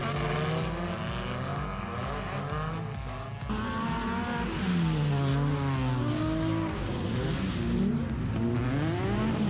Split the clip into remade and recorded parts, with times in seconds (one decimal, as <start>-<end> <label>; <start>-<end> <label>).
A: 0.0-9.5 recorded